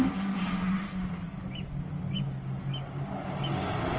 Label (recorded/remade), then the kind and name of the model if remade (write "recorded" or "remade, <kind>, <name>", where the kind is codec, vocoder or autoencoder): recorded